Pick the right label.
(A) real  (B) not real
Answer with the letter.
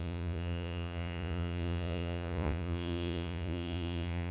B